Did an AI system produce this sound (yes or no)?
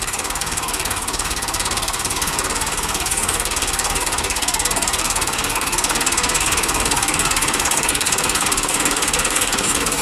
yes